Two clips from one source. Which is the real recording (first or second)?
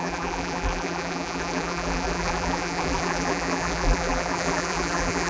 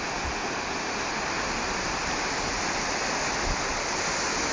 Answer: second